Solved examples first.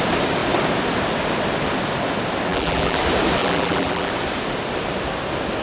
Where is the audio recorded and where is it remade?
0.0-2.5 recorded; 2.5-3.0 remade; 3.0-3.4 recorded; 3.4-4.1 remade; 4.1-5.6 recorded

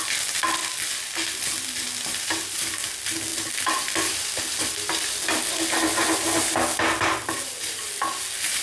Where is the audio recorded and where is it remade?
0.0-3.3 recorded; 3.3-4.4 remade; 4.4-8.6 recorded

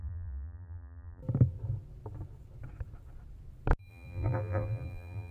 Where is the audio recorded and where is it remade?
0.0-1.2 remade; 1.2-3.9 recorded; 3.9-5.3 remade

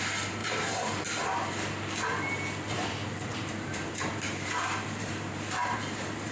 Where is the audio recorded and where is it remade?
0.0-0.4 recorded; 0.4-1.3 remade; 1.3-3.3 recorded; 3.3-6.3 remade